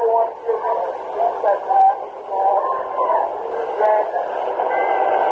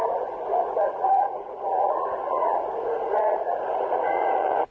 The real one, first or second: first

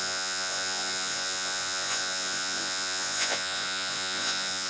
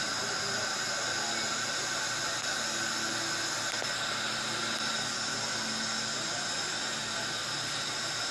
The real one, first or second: second